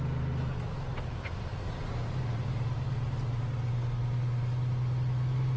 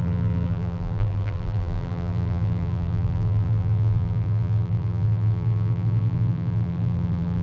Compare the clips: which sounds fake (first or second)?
second